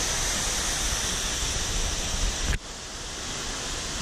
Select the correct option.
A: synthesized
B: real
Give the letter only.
B